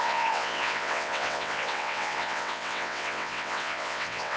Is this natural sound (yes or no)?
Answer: no